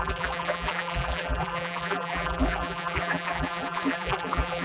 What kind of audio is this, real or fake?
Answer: fake